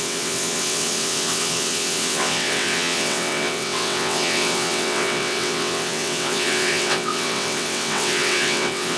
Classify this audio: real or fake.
fake